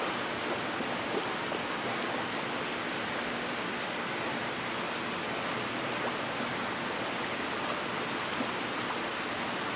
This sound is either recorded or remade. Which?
recorded